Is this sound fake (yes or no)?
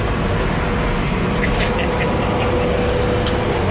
no